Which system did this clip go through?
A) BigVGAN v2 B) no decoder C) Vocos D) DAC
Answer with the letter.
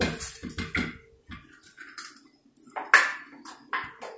B